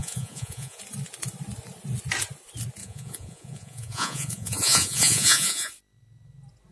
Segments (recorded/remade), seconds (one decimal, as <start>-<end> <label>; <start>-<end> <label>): 0.0-0.8 remade; 0.8-2.8 recorded; 2.8-5.7 remade; 5.7-6.7 recorded